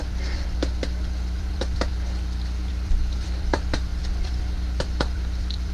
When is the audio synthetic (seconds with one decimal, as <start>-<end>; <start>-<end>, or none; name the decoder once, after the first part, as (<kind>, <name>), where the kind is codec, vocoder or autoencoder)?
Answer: 0.0-1.9 (vocoder, BigVGAN v2); 2.7-5.7

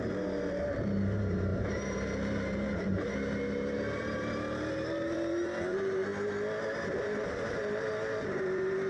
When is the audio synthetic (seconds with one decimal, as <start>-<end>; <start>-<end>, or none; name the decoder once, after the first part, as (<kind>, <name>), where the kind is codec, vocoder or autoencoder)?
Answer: 0.0-6.1 (vocoder, BigVGAN v2); 7.0-8.9

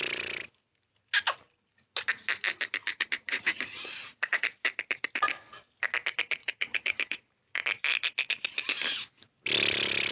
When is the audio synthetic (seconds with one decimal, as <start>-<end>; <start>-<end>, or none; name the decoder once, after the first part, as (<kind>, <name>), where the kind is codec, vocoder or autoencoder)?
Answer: 2.9-4.4 (vocoder, Vocos); 6.4-7.3

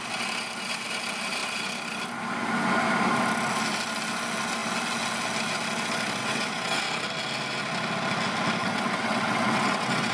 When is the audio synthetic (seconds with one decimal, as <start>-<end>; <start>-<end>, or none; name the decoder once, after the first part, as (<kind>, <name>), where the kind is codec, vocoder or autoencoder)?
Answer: 6.2-6.8 (vocoder, WaveNeXt); 8.6-10.1

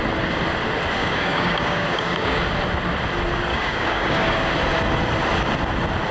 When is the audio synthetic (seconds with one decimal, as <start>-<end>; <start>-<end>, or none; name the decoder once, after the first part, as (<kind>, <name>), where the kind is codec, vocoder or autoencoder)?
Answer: 1.0-2.4 (codec, DAC); 3.5-4.5

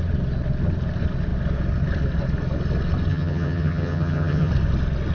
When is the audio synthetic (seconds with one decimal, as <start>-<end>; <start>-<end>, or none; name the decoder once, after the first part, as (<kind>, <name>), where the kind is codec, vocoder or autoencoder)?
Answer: 3.1-4.5 (vocoder, HiFi-GAN)

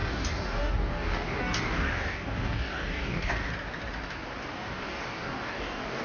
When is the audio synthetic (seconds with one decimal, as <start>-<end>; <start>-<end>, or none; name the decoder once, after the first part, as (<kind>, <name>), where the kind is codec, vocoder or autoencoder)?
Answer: 0.0-3.5 (codec, DAC); 4.5-6.0